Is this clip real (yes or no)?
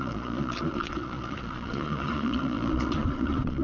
no